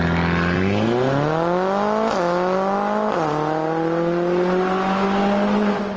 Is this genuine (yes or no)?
yes